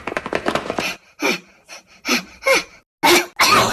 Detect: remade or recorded recorded